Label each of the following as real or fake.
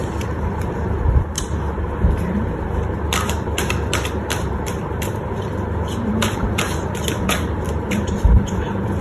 fake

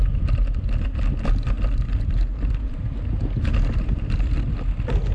real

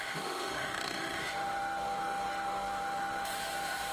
fake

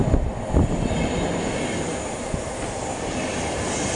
real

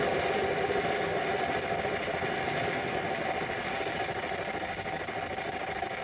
real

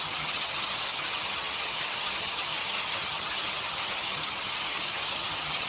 fake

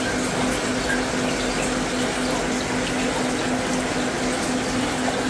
real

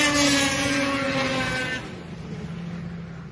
real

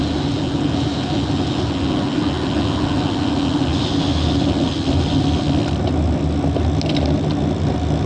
real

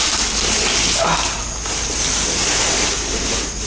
real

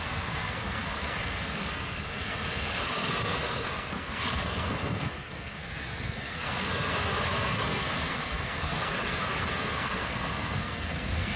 fake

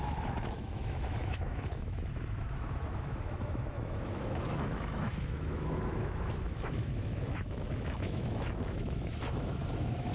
fake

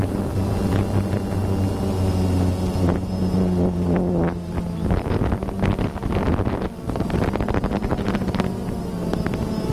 real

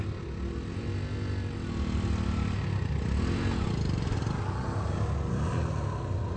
real